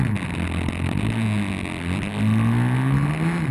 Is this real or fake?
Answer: real